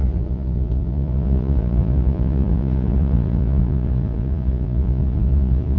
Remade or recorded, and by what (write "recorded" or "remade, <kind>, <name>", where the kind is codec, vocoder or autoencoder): remade, vocoder, Vocos